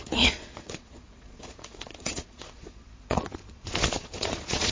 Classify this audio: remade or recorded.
remade